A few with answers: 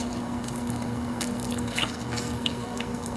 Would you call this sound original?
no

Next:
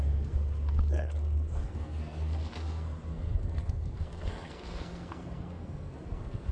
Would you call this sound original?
no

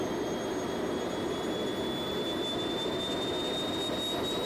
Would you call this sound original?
yes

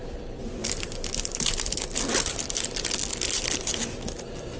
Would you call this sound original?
yes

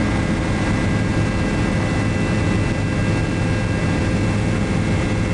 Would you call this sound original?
yes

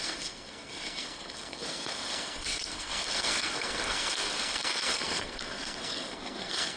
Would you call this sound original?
no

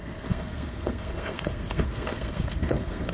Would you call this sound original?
no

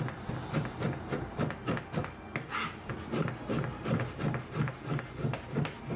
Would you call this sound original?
yes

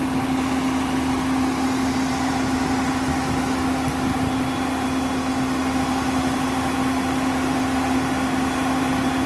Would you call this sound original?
yes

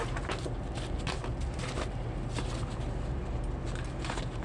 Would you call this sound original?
yes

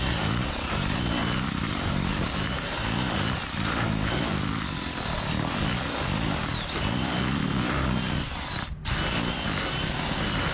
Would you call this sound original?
yes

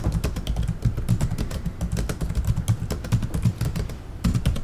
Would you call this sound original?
yes